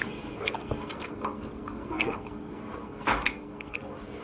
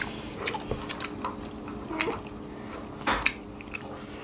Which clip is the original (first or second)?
second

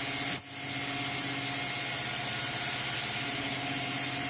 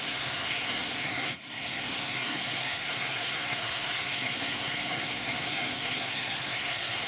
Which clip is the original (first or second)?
first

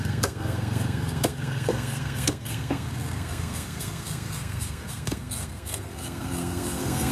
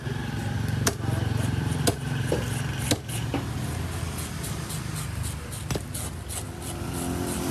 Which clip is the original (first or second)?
second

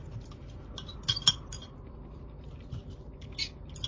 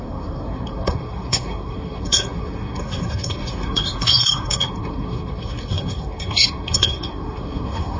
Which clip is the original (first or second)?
first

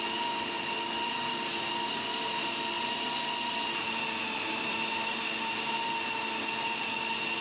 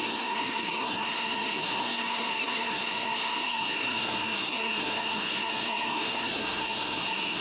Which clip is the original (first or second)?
first